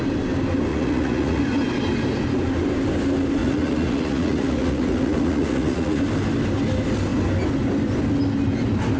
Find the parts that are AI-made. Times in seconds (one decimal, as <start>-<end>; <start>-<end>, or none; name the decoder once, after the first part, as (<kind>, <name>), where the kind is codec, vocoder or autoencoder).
0.7-1.4 (vocoder, Vocos); 3.4-6.0